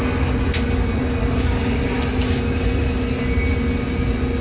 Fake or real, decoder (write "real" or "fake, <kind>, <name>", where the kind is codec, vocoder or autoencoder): real